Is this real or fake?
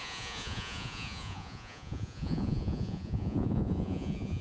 fake